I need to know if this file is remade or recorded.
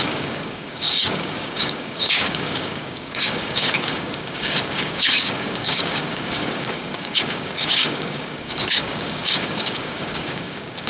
remade